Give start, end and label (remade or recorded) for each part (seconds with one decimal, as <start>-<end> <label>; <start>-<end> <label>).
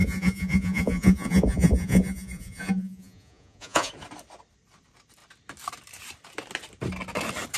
0.0-3.9 remade; 3.9-7.6 recorded